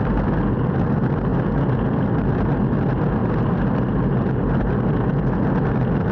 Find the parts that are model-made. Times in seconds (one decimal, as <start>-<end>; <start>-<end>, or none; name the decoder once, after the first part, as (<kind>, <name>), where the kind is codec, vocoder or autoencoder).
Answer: none